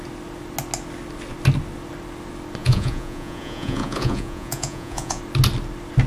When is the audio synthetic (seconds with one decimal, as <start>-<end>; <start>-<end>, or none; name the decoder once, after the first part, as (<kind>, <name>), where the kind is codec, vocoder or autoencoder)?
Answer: 2.6-5.2 (vocoder, Vocos)

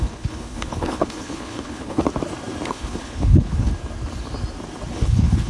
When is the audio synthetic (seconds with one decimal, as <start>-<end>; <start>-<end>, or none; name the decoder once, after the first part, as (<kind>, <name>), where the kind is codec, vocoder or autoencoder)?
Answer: 0.0-2.0 (codec, HILCodec); 2.7-3.7; 4.9-5.5

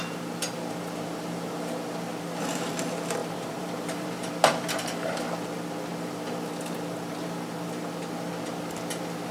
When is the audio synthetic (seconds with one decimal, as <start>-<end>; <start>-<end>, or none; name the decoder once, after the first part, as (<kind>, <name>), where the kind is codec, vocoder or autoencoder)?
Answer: 3.2-4.3 (vocoder, BigVGAN v2)

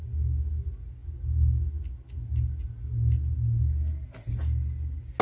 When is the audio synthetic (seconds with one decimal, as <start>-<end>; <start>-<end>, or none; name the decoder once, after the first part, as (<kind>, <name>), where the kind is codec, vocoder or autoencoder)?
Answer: none

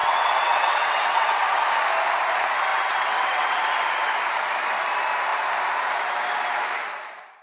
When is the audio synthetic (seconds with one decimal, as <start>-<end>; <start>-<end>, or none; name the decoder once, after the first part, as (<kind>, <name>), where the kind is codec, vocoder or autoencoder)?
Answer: 0.0-1.4 (vocoder, WaveNeXt); 2.7-3.6

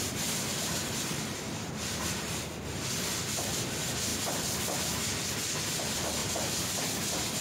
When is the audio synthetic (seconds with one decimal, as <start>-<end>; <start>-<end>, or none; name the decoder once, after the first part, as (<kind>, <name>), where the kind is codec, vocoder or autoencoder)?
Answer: 0.5-2.3 (vocoder, BigVGAN v2); 6.2-6.8

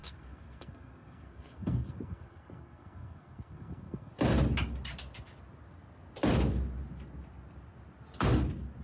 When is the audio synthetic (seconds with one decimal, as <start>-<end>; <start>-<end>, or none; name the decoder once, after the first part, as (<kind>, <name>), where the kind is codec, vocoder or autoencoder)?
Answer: 0.0-4.1 (codec, SNAC)

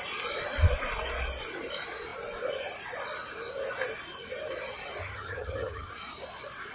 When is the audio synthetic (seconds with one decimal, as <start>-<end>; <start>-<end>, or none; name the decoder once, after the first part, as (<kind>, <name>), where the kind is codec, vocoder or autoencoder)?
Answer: 5.0-5.9 (vocoder, HiFi-GAN)